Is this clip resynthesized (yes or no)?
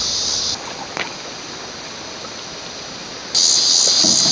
no